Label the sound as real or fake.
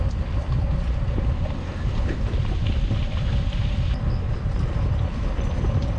real